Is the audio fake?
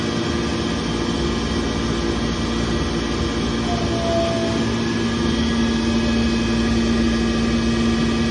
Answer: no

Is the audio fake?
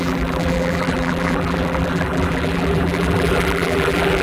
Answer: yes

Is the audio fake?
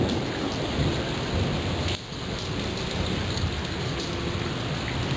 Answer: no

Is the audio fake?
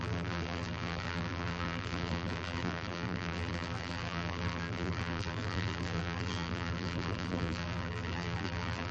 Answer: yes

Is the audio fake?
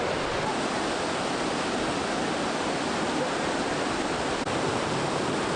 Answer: no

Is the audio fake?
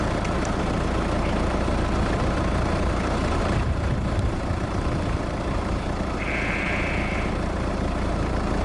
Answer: yes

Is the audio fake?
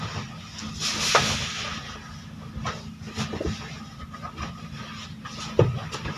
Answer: no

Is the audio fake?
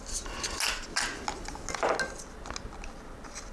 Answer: no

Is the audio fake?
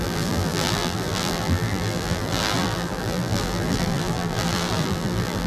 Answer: yes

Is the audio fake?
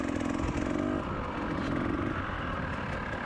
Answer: no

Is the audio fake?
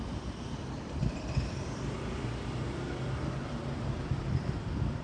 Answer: yes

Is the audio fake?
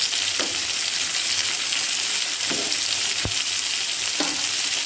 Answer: yes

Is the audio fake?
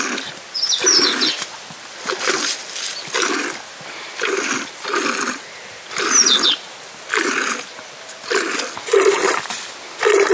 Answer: no